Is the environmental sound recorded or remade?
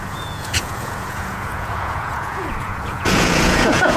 remade